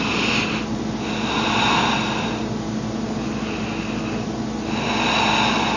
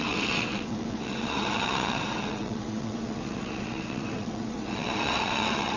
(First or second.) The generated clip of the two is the second